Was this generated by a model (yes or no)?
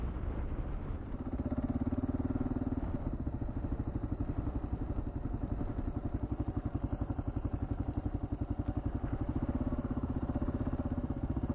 no